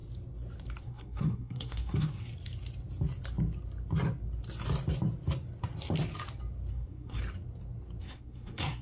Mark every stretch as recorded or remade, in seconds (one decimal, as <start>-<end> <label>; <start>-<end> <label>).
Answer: 0.0-0.8 recorded; 0.8-2.3 remade; 2.3-6.7 recorded; 6.7-7.2 remade; 7.2-8.0 recorded; 8.0-8.8 remade